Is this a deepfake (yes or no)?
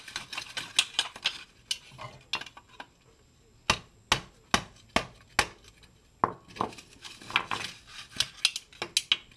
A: no